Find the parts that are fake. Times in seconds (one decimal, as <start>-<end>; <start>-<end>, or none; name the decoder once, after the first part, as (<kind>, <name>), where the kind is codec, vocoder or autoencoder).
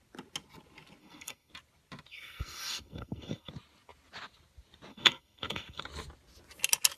1.0-1.5 (codec, SNAC); 2.1-3.5; 4.9-5.8